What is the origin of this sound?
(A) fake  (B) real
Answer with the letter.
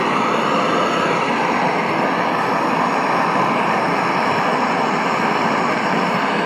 A